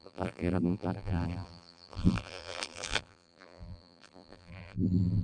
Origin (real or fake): fake